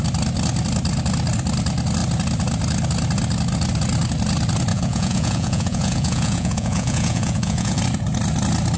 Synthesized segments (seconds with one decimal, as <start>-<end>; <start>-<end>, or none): 4.7-7.8